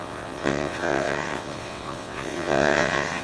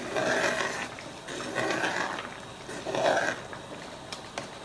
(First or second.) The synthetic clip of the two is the first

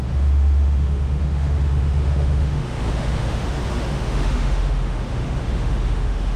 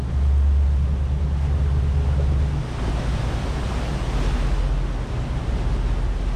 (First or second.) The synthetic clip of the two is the first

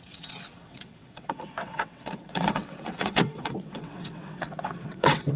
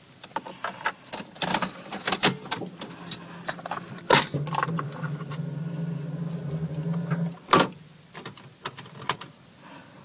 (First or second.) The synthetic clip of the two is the first